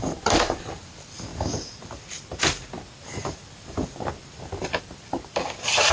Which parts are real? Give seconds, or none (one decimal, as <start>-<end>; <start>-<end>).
1.3-4.8